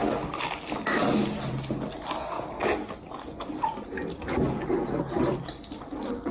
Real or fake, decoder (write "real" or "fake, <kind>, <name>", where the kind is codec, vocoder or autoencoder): real